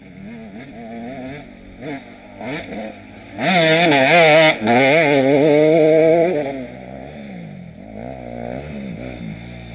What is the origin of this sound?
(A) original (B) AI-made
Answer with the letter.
A